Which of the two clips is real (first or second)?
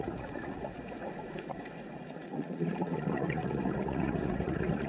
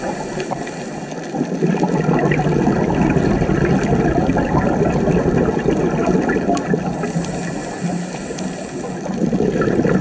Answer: second